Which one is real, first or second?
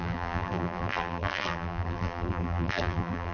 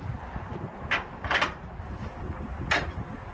second